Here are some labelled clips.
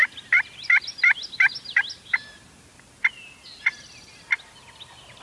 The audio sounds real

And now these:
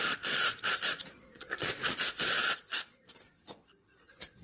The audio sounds fake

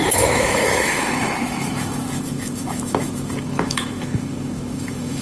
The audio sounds fake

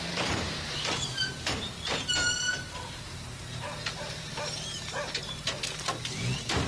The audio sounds fake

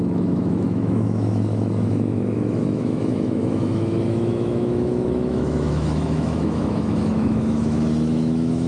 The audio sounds fake